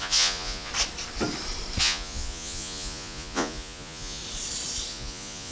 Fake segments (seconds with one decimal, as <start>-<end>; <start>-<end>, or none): 0.0-0.7; 1.8-4.2; 4.9-5.5